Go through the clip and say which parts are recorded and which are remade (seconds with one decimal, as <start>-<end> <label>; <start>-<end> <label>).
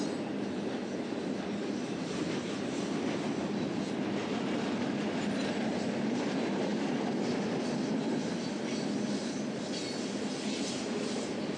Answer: 0.0-11.6 recorded